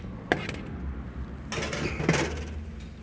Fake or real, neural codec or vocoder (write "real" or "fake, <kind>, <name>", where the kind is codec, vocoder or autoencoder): real